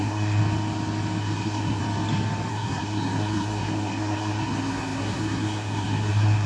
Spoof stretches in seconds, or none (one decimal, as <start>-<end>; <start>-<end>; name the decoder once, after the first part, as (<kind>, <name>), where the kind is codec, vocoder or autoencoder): 0.0-0.4 (codec, SNAC); 1.2-1.8; 2.5-6.5